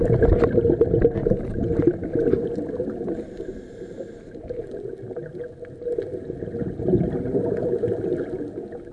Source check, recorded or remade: recorded